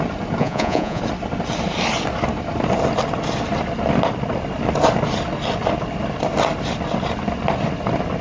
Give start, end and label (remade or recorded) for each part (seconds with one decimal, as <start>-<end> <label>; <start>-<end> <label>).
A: 0.0-0.4 recorded; 0.4-1.0 remade; 1.0-8.2 recorded